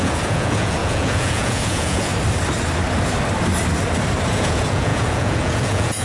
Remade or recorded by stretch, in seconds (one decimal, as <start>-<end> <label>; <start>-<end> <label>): 0.0-2.1 remade; 2.1-4.3 recorded; 4.3-6.0 remade